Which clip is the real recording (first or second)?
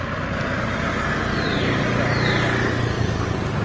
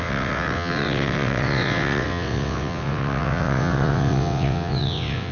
first